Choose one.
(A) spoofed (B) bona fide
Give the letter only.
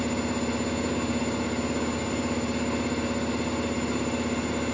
B